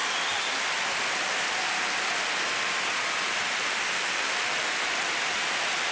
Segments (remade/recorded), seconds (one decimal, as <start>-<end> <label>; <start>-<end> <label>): 0.0-5.9 recorded